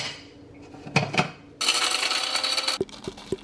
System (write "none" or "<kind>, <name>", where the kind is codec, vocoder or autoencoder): none